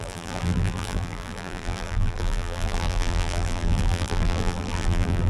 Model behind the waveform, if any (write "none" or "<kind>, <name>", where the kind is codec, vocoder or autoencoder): vocoder, BigVGAN v2